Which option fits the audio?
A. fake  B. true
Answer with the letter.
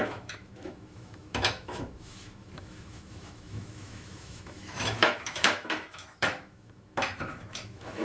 A